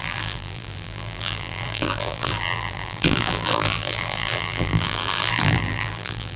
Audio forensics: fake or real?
fake